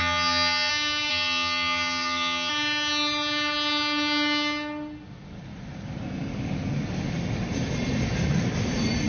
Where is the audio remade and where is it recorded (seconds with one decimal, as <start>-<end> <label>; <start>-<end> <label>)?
0.0-0.7 remade; 0.7-1.1 recorded; 1.1-2.5 remade; 2.5-9.1 recorded